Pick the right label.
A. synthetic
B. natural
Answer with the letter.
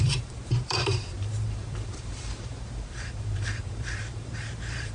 A